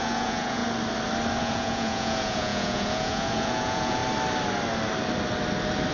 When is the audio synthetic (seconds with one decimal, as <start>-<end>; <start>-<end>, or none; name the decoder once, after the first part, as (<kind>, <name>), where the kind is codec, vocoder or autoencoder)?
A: 0.0-0.6 (vocoder, Vocos); 1.4-4.0